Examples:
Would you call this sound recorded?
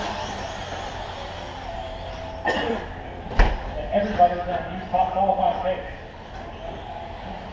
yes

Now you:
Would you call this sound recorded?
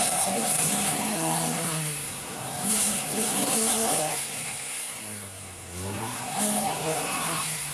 no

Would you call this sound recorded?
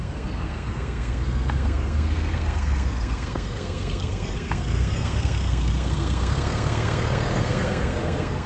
no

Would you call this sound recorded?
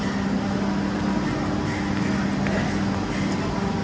yes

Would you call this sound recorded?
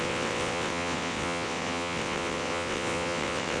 no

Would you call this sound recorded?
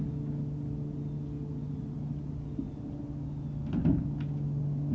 yes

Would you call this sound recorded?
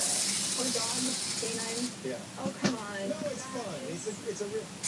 yes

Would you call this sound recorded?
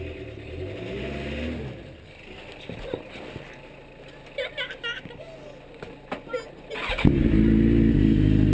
yes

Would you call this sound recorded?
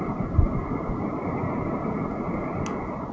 yes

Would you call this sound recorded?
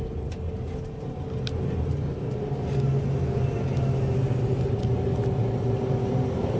yes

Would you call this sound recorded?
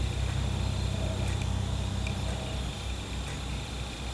yes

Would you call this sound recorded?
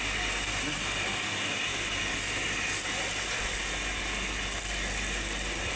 yes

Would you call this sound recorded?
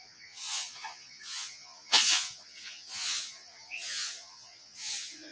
no